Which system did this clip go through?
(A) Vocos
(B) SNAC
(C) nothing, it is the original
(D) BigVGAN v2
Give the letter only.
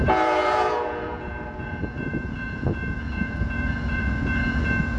A